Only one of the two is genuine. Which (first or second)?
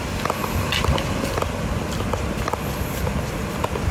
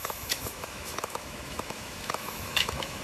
first